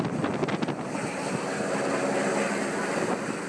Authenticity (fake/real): real